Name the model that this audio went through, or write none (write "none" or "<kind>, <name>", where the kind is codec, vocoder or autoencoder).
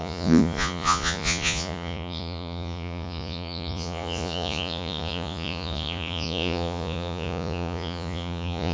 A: vocoder, Vocos